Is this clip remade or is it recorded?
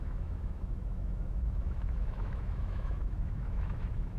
remade